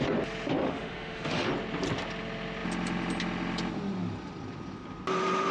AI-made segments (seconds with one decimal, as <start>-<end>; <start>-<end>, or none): 0.6-1.5